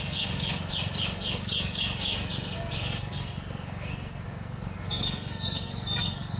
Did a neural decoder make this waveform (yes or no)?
yes